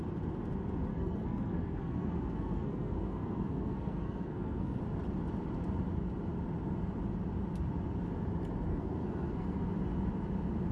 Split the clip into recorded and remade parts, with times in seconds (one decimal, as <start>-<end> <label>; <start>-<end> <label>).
0.0-0.9 recorded; 0.9-4.8 remade; 4.8-8.7 recorded; 8.7-9.6 remade; 9.6-10.7 recorded